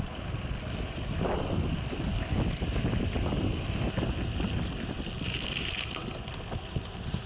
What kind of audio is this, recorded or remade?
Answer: recorded